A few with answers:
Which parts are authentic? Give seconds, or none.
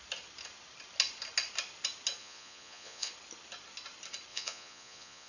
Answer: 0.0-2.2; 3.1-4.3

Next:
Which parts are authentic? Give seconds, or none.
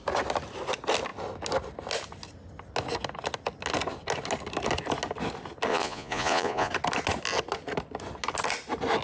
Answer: 0.0-5.7; 6.7-9.0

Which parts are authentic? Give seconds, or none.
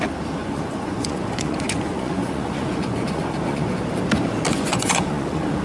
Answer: 0.0-0.4; 3.8-4.5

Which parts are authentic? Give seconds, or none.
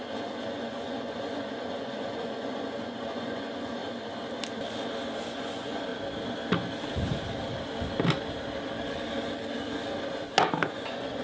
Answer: 3.8-5.3; 5.9-10.7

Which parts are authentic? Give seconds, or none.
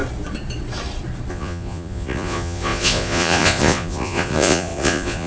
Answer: 0.0-1.3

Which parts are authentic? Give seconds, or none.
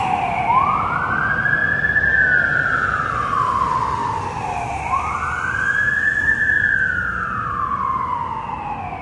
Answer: 0.0-9.0